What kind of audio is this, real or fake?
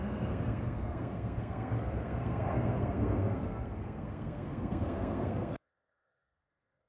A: fake